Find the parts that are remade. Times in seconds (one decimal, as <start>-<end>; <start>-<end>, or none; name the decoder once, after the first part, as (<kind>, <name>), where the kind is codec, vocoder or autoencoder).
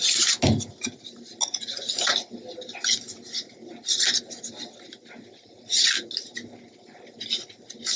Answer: none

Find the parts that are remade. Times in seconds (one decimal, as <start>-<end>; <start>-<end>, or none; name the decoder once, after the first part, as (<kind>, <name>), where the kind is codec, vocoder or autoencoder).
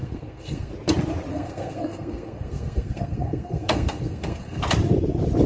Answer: 0.0-0.7 (codec, SNAC); 1.3-4.6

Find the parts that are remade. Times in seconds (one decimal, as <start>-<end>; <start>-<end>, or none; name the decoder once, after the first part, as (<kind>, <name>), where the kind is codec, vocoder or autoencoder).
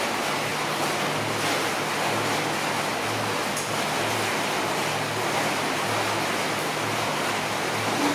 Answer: none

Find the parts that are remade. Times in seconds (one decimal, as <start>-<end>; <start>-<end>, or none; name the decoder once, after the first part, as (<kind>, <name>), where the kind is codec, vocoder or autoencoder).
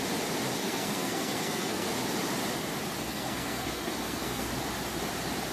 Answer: 0.6-1.9 (codec, SNAC); 3.0-4.5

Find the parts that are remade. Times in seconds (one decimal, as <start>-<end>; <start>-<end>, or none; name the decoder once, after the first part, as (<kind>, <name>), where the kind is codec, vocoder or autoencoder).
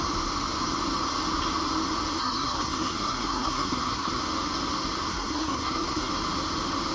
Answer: 2.2-4.2 (codec, SNAC); 5.1-6.1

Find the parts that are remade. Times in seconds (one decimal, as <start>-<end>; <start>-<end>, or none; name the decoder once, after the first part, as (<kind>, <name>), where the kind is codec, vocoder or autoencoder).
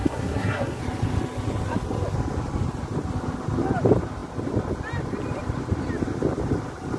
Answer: 0.0-0.8 (codec, SNAC)